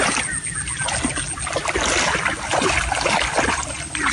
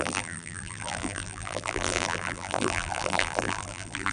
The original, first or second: first